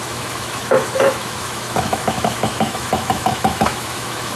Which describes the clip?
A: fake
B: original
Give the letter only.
A